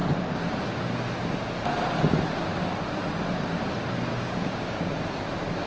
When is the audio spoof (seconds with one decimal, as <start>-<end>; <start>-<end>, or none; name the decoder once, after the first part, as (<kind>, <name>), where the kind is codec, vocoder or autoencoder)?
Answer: 4.1-4.9 (codec, DAC)